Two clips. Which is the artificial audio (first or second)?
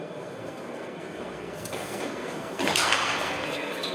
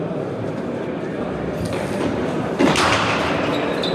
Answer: first